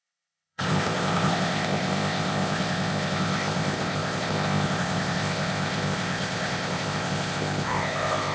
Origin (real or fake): fake